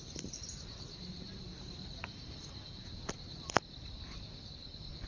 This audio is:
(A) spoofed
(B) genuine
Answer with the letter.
B